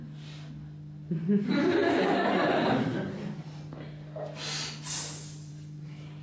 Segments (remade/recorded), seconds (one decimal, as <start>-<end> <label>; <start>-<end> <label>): 0.0-6.2 recorded